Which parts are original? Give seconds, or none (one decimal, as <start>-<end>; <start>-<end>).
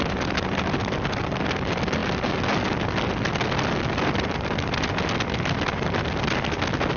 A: 0.0-7.0